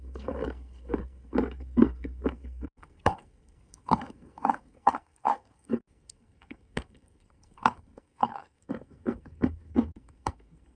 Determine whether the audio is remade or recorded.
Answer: remade